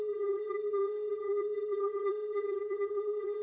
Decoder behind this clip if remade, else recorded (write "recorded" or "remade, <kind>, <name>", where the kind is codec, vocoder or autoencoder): remade, codec, SNAC